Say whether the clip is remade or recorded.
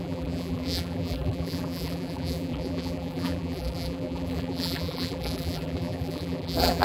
remade